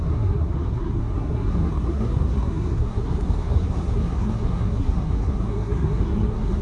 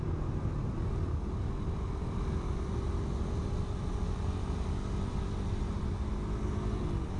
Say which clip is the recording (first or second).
second